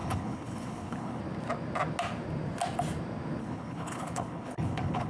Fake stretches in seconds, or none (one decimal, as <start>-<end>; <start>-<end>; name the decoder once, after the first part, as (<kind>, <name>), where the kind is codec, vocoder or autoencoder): 0.0-1.2 (codec, HILCodec); 3.4-5.1

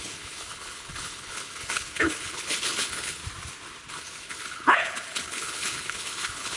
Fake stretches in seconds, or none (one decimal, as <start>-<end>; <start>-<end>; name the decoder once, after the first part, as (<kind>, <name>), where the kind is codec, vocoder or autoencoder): 0.0-3.2 (codec, HILCodec); 3.9-6.6

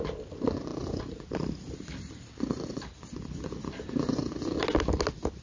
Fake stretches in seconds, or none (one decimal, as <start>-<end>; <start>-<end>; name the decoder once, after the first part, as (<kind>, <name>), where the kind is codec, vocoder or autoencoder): none

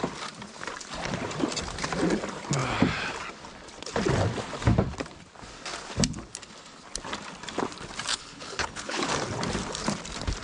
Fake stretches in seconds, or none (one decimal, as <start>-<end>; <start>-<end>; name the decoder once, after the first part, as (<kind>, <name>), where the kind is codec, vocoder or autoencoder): 8.1-9.1 (codec, HILCodec)

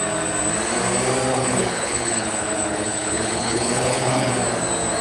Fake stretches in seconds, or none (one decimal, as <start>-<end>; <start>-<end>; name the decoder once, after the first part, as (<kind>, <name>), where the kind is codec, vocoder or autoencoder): 1.3-4.3 (codec, HILCodec)